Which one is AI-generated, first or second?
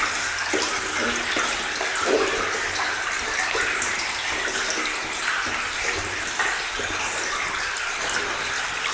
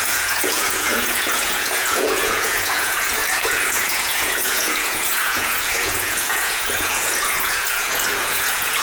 second